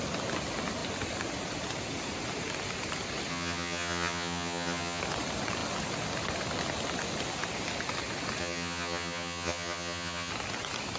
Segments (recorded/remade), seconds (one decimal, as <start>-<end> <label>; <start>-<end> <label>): 0.0-3.3 recorded; 3.3-5.0 remade; 5.0-8.4 recorded; 8.4-10.3 remade; 10.3-11.0 recorded